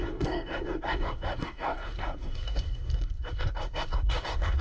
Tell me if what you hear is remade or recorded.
remade